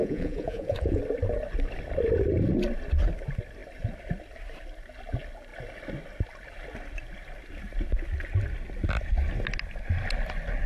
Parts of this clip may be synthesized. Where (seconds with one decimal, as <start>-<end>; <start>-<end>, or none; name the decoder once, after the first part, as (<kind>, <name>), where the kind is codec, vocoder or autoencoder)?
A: 0.0-1.0 (vocoder, Vocos)